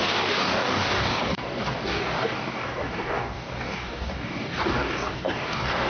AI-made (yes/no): yes